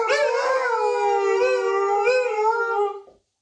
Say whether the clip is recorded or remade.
recorded